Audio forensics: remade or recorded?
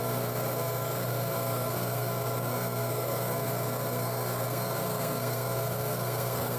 remade